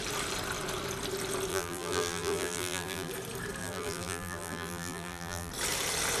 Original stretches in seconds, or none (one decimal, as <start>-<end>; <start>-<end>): 0.0-1.5; 3.1-3.6; 5.5-6.2